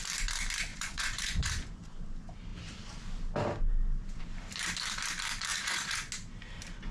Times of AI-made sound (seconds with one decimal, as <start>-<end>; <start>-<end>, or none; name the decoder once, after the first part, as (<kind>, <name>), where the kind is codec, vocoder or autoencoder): 0.7-2.0 (vocoder, Vocos); 5.5-6.1